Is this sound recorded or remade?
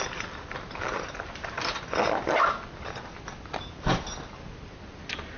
recorded